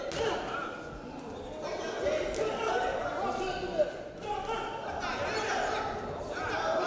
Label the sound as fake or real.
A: real